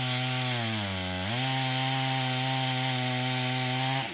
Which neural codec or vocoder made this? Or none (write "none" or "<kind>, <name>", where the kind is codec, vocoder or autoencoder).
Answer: none